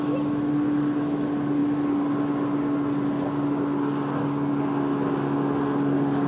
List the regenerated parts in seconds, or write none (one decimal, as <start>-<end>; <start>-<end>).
none